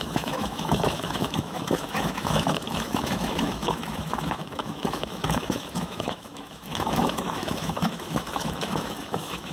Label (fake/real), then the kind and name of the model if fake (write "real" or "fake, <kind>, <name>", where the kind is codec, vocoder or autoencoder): fake, autoencoder, DAC-VAE